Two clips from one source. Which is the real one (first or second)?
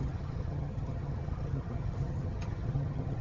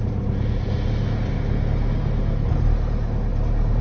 second